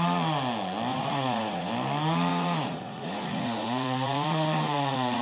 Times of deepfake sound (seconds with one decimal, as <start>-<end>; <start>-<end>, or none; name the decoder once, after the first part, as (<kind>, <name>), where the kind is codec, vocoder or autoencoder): 0.9-1.7 (vocoder, Vocos); 2.3-5.2